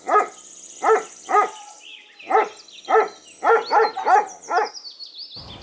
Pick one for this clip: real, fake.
real